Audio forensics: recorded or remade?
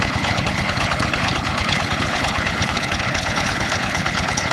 remade